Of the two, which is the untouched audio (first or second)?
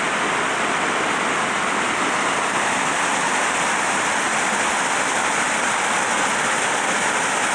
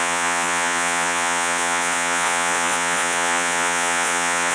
first